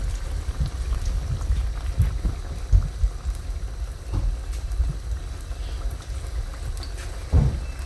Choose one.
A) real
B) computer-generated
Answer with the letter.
A